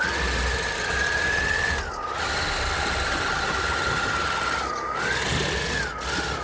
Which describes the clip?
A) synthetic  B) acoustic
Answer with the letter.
B